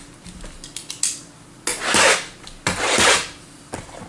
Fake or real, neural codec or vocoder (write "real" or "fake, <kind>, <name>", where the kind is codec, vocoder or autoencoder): real